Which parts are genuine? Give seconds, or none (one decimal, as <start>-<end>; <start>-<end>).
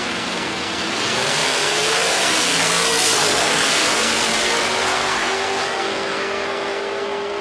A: none